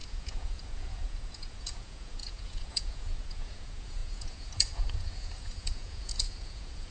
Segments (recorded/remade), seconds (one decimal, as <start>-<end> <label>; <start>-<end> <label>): 0.0-6.9 remade